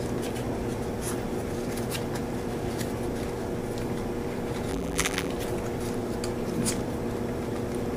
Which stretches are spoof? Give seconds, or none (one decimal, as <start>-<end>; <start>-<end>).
4.7-5.3